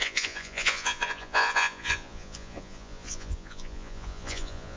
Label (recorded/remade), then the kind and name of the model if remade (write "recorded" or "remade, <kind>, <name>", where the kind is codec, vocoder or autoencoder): remade, vocoder, Vocos